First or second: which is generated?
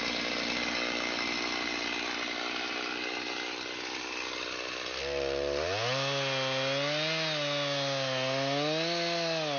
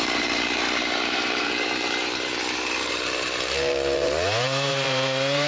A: second